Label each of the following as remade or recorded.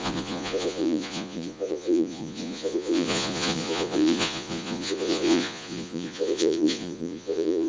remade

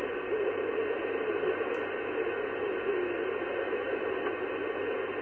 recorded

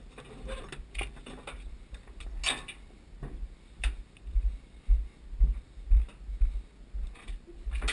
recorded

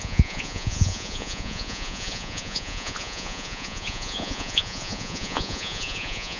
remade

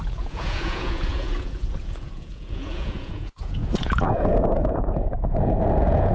remade